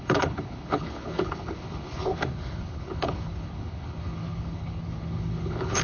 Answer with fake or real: fake